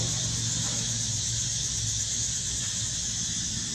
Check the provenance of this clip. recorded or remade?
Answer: recorded